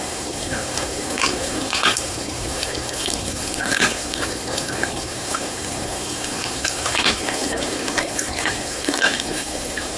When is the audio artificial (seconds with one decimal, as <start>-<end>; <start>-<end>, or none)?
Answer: 0.0-10.0